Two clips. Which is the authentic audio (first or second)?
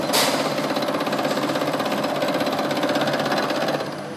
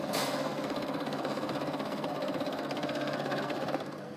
first